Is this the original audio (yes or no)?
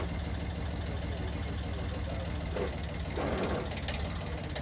yes